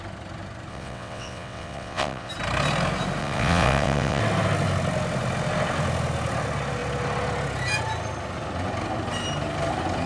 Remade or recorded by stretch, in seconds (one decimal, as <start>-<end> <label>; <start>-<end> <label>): 0.0-0.7 recorded; 0.7-2.3 remade; 2.3-3.2 recorded; 3.2-4.2 remade; 4.2-10.1 recorded